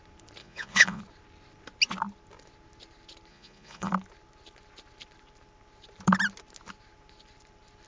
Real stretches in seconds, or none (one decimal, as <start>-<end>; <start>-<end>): 0.0-0.4; 1.0-3.3; 3.9-7.9